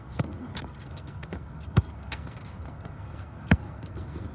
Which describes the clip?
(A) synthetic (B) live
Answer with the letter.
A